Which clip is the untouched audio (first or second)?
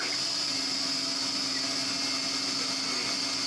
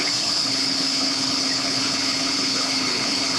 first